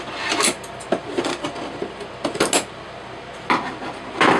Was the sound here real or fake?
real